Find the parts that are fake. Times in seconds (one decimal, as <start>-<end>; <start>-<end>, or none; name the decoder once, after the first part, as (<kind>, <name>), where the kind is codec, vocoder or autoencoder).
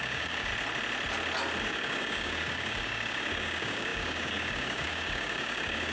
0.0-0.5 (codec, DAC); 1.6-5.9